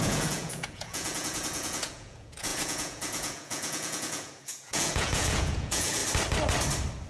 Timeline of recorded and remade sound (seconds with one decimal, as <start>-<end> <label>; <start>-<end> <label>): 0.0-6.0 remade; 6.0-7.1 recorded